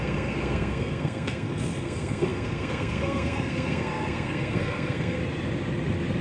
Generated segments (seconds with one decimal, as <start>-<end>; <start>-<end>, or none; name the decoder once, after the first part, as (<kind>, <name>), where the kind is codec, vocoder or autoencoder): 0.0-5.2 (codec, SNAC)